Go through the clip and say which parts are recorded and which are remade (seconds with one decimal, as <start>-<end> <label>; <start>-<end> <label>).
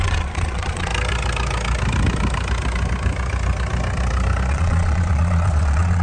0.0-0.9 remade; 0.9-4.5 recorded; 4.5-6.0 remade